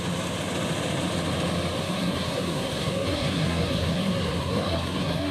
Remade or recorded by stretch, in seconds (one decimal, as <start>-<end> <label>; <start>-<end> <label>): 0.0-1.8 recorded; 1.8-5.3 remade